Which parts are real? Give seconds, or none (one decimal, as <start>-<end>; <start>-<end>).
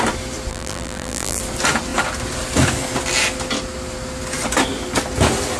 0.0-0.5; 1.4-5.6